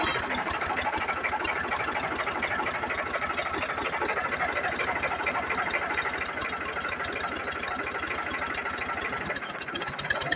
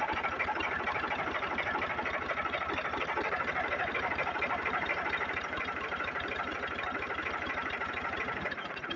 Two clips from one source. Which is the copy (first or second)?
second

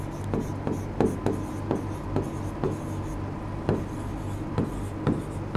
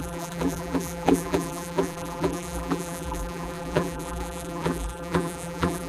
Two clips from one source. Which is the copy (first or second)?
second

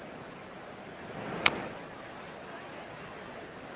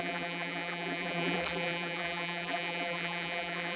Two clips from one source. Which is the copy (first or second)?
second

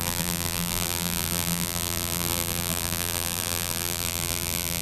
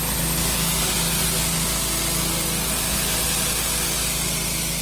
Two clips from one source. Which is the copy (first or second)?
first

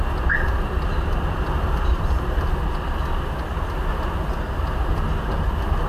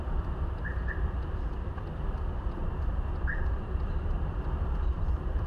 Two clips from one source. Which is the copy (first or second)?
second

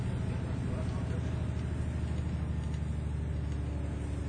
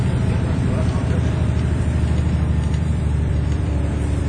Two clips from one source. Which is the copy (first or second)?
second